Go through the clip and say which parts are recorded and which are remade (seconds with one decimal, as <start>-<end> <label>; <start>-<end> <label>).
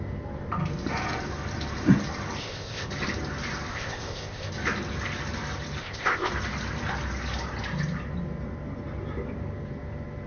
0.0-2.4 recorded; 2.4-2.9 remade; 2.9-3.7 recorded; 3.7-4.5 remade; 4.5-5.8 recorded; 5.8-6.3 remade; 6.3-10.3 recorded